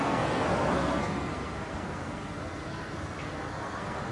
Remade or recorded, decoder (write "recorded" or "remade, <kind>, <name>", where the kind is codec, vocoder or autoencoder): remade, codec, SNAC